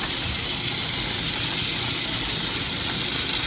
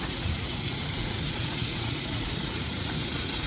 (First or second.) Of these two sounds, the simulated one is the second